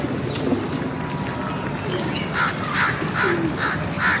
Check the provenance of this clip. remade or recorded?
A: recorded